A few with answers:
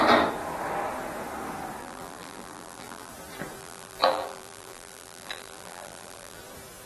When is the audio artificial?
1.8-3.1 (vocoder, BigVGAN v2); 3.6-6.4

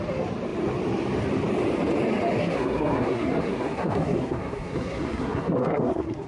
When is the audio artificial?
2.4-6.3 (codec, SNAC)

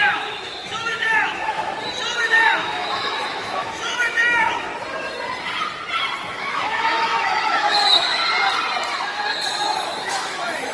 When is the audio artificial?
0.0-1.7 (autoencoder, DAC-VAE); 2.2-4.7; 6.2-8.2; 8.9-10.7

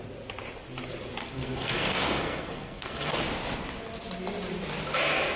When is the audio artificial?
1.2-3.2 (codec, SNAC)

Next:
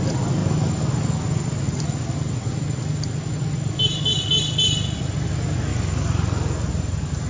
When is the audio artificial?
none